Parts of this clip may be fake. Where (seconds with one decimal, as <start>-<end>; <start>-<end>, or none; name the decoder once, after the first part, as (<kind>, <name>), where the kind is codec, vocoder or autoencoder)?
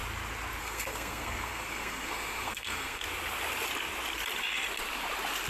0.6-3.0 (codec, SNAC)